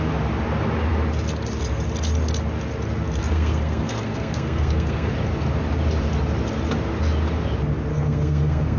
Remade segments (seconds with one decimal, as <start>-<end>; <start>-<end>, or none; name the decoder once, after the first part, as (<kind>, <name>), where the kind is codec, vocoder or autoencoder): 3.2-5.1 (codec, SNAC); 7.9-8.8